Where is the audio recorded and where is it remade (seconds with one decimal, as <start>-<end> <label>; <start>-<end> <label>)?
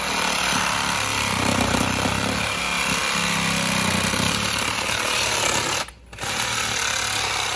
0.0-7.6 recorded